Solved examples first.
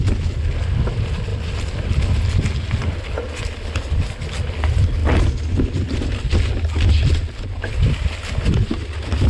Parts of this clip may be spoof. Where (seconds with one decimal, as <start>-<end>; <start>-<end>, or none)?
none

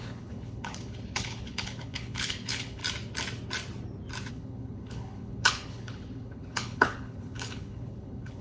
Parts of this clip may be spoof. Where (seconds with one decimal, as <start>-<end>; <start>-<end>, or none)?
0.0-2.8; 4.3-8.4

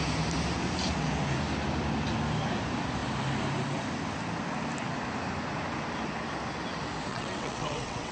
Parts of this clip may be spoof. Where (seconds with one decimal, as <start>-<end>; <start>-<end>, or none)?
7.1-8.1

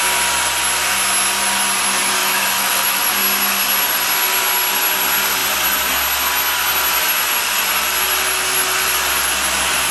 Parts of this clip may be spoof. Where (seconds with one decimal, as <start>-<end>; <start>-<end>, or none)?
2.2-3.1

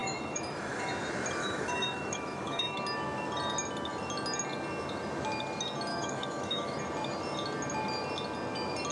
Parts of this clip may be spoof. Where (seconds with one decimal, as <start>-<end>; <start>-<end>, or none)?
0.0-0.9; 1.4-2.8; 5.9-6.8

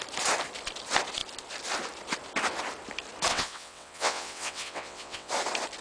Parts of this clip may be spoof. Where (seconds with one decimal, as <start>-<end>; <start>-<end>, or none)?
3.3-5.3